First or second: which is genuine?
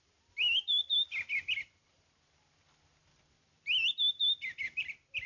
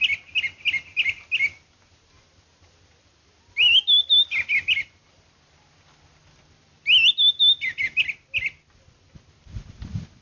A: second